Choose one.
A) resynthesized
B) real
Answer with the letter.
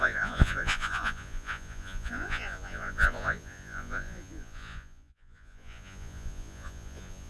A